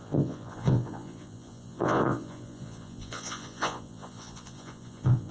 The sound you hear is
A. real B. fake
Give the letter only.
B